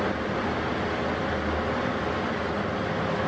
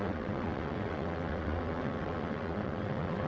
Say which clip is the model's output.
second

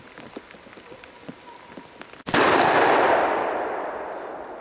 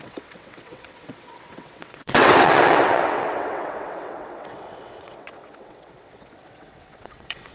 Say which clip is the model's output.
second